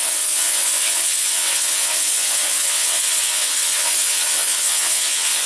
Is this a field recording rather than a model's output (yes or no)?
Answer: no